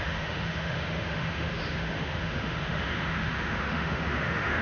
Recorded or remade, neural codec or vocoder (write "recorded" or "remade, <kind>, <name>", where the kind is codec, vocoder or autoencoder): remade, autoencoder, DAC-VAE